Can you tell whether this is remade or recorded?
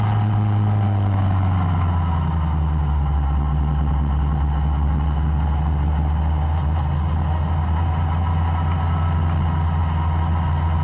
recorded